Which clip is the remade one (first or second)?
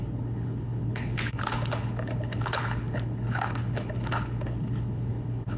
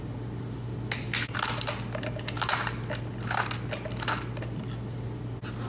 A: first